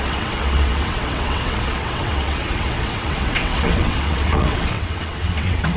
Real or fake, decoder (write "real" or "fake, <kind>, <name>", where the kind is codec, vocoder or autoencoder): fake, vocoder, WaveNeXt